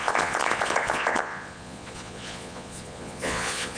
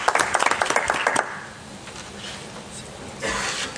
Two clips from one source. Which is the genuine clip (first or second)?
second